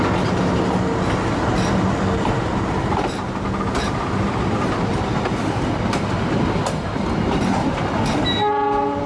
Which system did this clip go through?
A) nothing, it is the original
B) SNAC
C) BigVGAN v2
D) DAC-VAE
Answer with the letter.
A